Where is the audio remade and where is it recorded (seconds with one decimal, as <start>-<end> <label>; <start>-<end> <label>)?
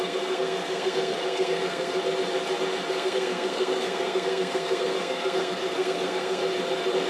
0.0-2.0 remade; 2.0-2.9 recorded; 2.9-6.4 remade; 6.4-7.1 recorded